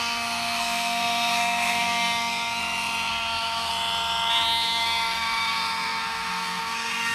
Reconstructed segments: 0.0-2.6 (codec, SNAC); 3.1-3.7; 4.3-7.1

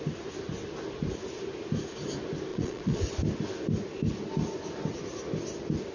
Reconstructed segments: 2.5-3.0 (vocoder, Vocos)

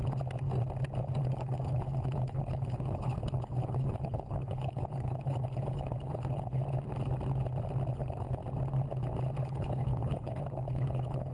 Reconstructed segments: 1.2-6.6 (codec, HILCodec); 7.9-8.4; 9.4-11.3

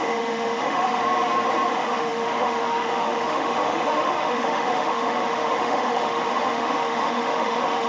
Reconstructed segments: 0.0-1.0 (autoencoder, DAC-VAE); 1.7-7.9

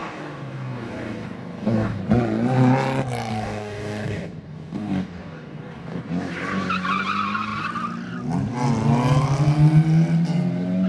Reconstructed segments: 0.0-2.0 (codec, DAC); 3.3-6.0